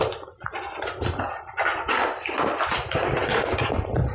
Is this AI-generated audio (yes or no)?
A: no